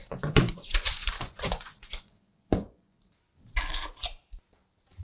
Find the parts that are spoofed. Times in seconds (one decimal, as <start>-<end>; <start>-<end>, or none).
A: 0.0-3.0

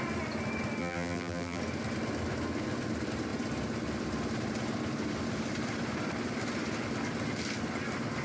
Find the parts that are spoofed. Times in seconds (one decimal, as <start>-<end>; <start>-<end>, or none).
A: 0.8-1.6

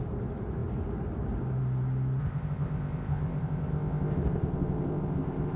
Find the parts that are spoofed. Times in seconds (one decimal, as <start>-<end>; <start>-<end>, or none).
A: 2.2-5.6

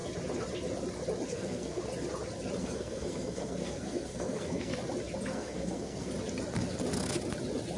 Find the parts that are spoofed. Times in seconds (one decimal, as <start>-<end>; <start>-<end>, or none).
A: 1.3-1.8; 2.6-4.7; 5.3-6.1

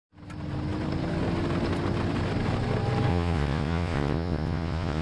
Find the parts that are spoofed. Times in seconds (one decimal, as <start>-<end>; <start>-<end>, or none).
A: 3.1-5.0

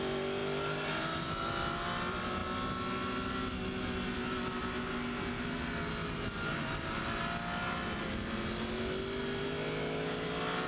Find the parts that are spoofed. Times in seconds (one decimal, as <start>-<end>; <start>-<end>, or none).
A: none